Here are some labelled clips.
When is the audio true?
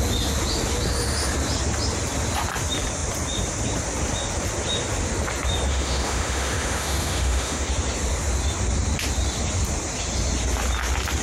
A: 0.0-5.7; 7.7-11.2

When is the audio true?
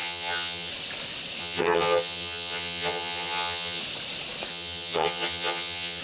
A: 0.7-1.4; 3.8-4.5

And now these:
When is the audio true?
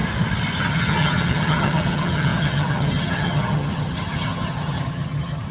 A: 0.0-0.6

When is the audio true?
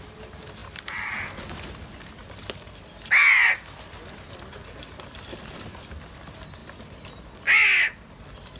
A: 0.0-0.6; 1.2-8.6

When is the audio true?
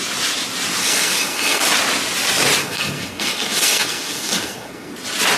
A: 0.0-0.8; 1.6-2.6; 4.9-5.4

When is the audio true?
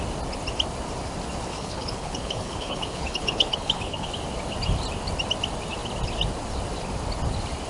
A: 0.0-1.5; 4.1-7.7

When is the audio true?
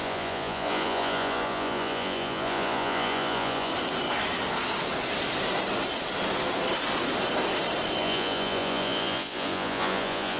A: 3.7-8.0